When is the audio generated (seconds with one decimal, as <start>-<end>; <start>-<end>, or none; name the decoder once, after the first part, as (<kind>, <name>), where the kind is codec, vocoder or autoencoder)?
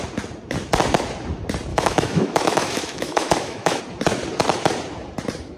1.7-3.8 (autoencoder, DAC-VAE)